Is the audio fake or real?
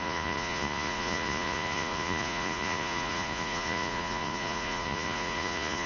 fake